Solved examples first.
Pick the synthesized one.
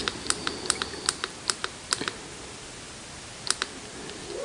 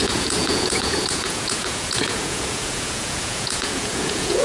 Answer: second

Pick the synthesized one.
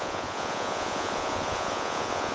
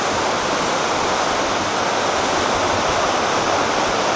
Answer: first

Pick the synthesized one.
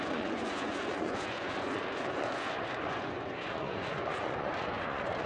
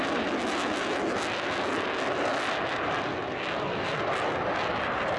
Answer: first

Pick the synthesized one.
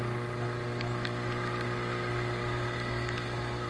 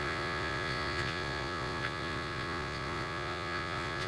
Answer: second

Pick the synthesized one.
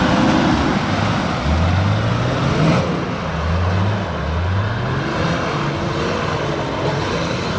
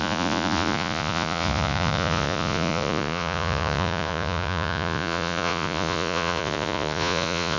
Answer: second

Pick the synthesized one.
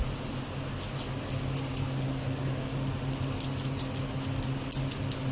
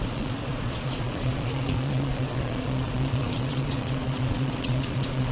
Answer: second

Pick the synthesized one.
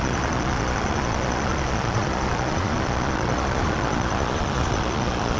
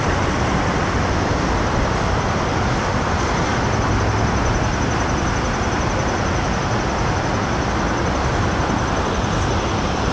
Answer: first